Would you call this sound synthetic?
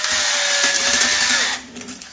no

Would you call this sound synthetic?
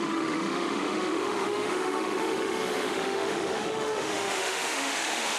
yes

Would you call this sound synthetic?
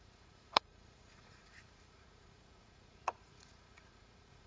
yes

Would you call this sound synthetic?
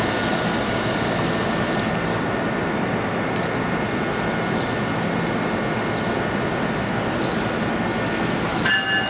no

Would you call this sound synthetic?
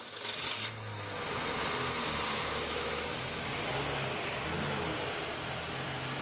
no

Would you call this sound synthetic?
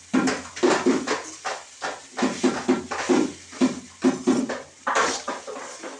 no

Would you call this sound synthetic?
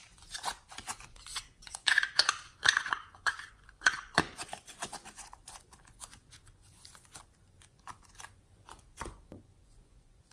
yes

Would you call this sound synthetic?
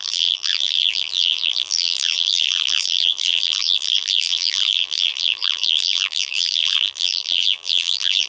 yes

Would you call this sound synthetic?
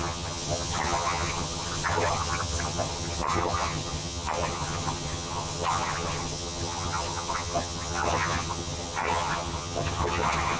yes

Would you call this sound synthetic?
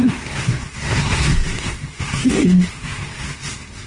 yes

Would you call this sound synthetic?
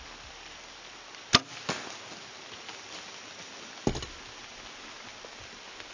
no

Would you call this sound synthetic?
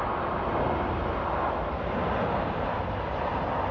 no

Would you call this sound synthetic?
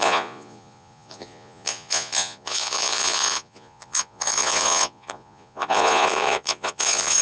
yes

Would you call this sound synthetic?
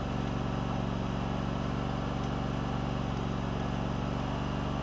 no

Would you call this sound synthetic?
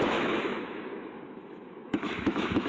yes